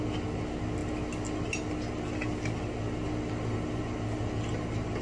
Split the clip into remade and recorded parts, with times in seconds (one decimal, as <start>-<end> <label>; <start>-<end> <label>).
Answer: 0.0-5.0 recorded